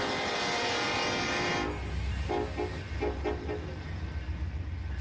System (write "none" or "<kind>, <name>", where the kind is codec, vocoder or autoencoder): none